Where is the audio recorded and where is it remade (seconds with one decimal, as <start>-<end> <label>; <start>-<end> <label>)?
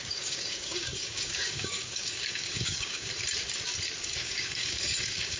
0.0-3.1 remade; 3.1-4.0 recorded; 4.0-5.4 remade